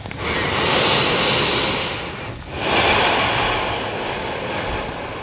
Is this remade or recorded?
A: recorded